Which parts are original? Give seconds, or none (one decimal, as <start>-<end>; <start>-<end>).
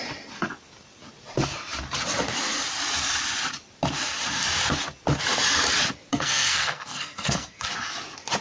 0.0-6.1; 7.7-8.4